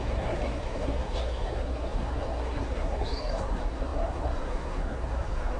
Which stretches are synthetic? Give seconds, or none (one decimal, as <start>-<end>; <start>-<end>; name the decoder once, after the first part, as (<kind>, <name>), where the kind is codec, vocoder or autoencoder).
0.0-5.6 (codec, SNAC)